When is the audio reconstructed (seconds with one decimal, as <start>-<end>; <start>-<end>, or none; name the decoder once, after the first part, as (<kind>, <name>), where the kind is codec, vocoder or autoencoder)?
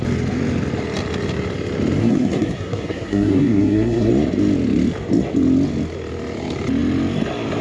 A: 2.0-4.1 (codec, SNAC)